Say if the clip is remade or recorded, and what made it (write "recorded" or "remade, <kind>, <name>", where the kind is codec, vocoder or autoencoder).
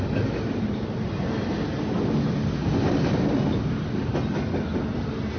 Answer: recorded